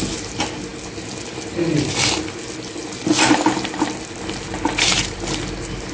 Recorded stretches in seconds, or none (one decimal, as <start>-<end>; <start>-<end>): 0.0-5.9